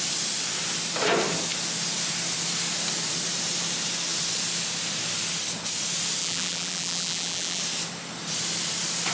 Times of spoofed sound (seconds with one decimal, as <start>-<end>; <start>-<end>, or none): 6.2-7.6

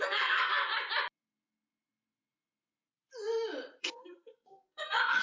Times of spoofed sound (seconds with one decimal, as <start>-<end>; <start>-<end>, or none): 0.0-0.7; 3.8-5.2

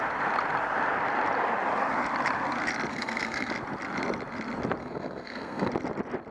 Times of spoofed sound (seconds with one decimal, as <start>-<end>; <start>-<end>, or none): 2.9-3.5; 4.8-5.7

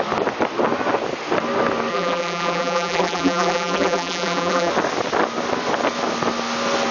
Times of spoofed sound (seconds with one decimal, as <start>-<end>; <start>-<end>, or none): 1.9-4.7